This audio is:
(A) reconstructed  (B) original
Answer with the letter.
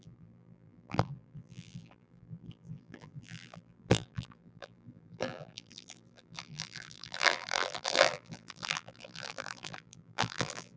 A